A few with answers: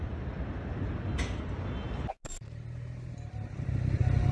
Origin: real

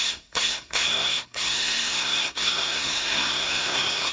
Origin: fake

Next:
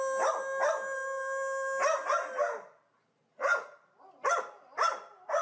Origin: real